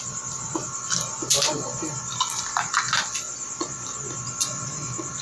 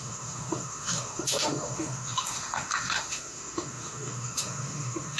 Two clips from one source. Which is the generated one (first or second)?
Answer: second